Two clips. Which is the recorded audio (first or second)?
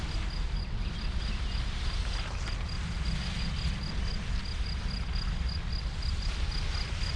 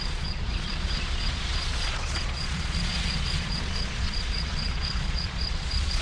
first